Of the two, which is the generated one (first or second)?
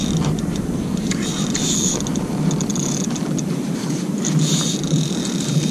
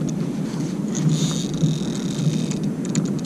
first